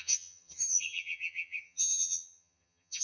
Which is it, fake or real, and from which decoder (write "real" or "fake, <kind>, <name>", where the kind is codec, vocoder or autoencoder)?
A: fake, vocoder, HiFi-GAN